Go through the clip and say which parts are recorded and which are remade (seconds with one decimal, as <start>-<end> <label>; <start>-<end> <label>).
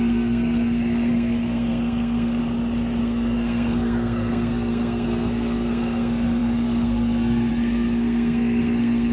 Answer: 0.0-2.4 remade; 2.4-3.0 recorded; 3.0-9.1 remade